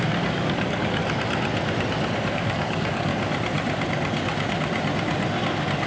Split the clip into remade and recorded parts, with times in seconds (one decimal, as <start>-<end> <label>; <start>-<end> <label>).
0.0-1.0 remade; 1.0-2.3 recorded; 2.3-3.1 remade; 3.1-5.9 recorded